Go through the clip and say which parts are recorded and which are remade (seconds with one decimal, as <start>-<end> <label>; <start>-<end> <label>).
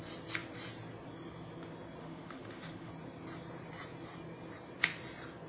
0.0-2.0 recorded; 2.0-2.9 remade; 2.9-5.5 recorded